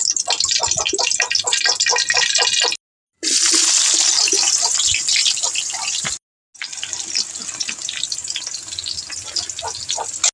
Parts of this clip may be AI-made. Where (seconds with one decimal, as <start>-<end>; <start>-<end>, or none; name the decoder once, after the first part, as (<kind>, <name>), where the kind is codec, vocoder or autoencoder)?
none